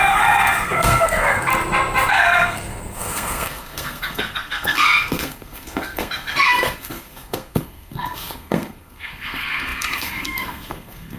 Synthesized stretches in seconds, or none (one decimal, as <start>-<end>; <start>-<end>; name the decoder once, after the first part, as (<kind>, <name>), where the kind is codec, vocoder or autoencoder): 0.0-1.5 (codec, SNAC); 2.1-11.2

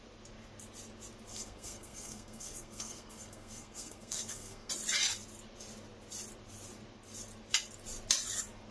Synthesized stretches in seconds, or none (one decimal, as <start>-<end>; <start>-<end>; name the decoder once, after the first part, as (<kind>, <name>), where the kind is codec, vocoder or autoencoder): 1.3-4.7 (codec, SNAC)

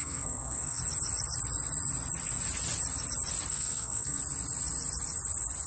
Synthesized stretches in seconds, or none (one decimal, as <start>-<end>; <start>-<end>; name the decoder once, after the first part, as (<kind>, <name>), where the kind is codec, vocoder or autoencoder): 0.0-0.8 (codec, SNAC); 3.5-4.2

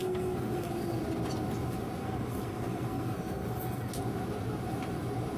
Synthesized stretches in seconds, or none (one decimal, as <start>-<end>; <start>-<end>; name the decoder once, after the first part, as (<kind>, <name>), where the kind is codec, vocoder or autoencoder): 0.0-0.7 (codec, SNAC); 2.0-3.9

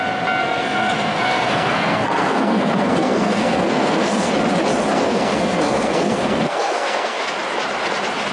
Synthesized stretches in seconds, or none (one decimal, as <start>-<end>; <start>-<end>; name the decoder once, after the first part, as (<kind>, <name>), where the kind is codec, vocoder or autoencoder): 0.4-4.3 (codec, SNAC); 4.9-7.2

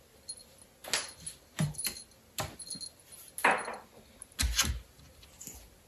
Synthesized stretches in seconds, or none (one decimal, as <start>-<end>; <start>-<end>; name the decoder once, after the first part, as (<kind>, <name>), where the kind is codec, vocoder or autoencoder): none